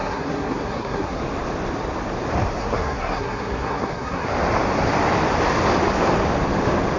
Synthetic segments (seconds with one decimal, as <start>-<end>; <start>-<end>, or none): 0.0-1.2; 2.6-4.3

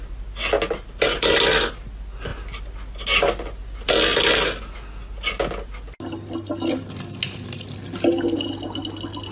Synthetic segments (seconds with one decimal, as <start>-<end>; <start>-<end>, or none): none